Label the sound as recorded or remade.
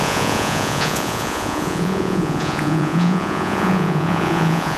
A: remade